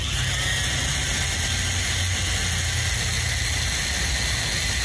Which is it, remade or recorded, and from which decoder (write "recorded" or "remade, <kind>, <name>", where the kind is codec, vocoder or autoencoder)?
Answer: recorded